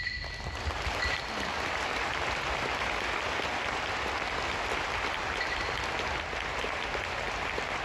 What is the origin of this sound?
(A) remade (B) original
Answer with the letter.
B